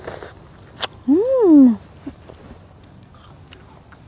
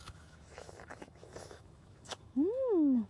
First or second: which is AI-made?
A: second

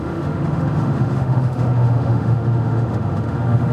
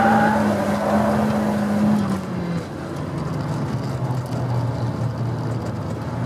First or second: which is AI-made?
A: first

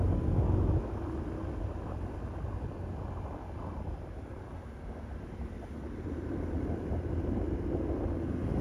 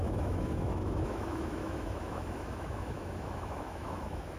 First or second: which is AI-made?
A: second